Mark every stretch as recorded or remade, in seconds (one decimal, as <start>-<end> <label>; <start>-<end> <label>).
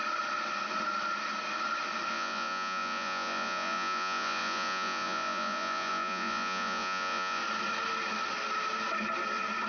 0.0-2.1 recorded; 2.1-7.4 remade; 7.4-9.7 recorded